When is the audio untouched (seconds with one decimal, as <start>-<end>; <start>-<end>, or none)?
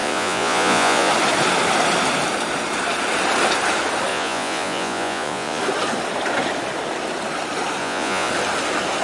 1.1-4.1; 5.6-7.8; 8.3-9.0